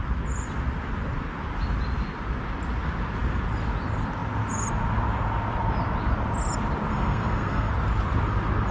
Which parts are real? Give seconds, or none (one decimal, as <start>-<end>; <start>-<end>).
0.0-6.9; 7.7-8.7